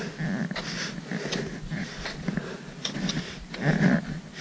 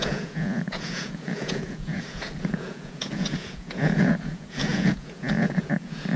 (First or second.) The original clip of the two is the first